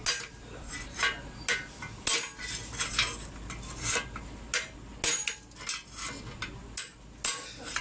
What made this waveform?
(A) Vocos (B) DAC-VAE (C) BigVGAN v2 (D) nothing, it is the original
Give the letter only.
D